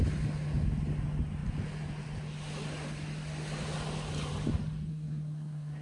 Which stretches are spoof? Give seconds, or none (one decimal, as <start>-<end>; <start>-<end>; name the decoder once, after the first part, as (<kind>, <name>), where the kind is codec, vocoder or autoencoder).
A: 4.9-5.8 (codec, SNAC)